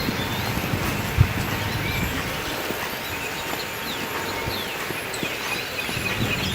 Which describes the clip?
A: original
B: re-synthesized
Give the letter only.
A